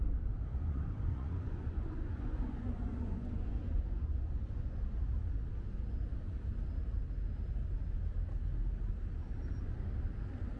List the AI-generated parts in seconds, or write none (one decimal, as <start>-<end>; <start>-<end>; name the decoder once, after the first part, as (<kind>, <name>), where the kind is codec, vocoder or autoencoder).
0.5-4.8 (vocoder, Vocos)